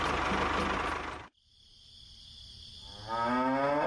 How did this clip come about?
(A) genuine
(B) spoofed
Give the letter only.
A